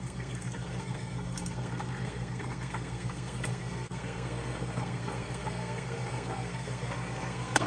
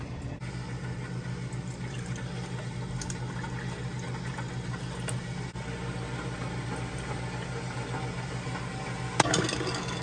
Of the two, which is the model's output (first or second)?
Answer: first